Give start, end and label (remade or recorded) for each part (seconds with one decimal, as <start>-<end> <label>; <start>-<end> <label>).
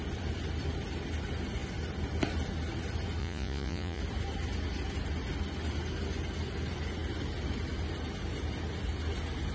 0.0-3.2 recorded; 3.2-4.0 remade; 4.0-9.5 recorded